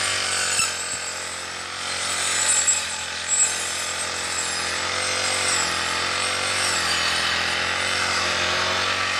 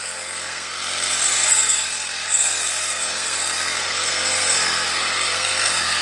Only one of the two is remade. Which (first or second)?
second